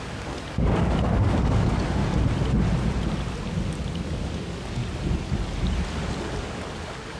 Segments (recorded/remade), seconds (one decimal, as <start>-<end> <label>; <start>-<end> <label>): 0.0-2.0 remade; 2.0-3.8 recorded; 3.8-4.8 remade; 4.8-6.0 recorded; 6.0-7.2 remade